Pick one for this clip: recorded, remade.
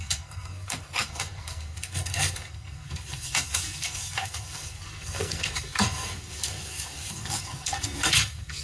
remade